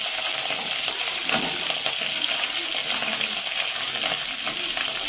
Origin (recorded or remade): recorded